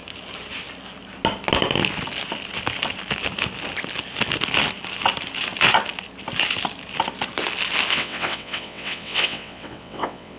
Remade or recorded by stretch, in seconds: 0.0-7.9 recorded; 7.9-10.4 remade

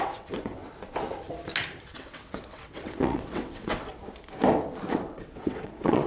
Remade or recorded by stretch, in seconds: 0.0-0.6 remade; 0.6-1.8 recorded; 1.8-3.9 remade; 3.9-4.9 recorded; 4.9-6.1 remade